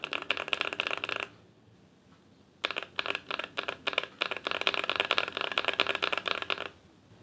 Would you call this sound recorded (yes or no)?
yes